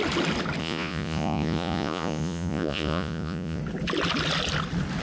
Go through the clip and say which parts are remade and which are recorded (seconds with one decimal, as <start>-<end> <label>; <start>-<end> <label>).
0.0-0.6 recorded; 0.6-3.6 remade; 3.6-5.0 recorded